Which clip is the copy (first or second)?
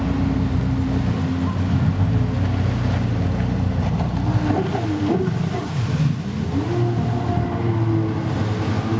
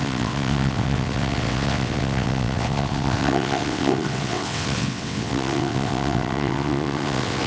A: second